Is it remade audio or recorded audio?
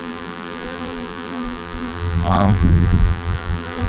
remade